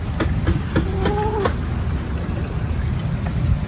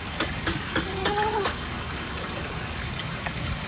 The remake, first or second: second